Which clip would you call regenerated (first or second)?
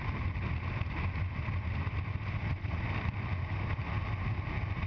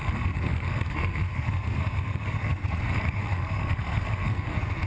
second